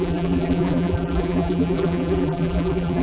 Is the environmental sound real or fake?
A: fake